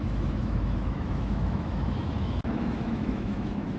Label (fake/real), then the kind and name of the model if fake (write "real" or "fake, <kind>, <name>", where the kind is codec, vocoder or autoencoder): fake, autoencoder, DAC-VAE